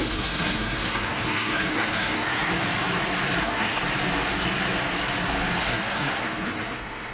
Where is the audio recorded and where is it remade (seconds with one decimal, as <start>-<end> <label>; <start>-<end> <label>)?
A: 0.0-2.5 remade; 2.5-3.4 recorded; 3.4-3.8 remade; 3.8-5.6 recorded; 5.6-7.1 remade